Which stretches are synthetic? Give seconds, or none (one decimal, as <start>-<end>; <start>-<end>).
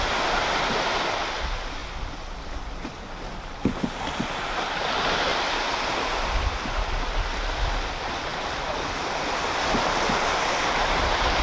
8.3-10.1